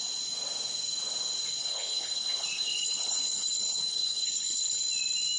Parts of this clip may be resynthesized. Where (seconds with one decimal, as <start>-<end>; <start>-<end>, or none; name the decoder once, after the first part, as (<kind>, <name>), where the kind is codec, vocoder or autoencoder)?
1.6-4.8 (codec, HILCodec)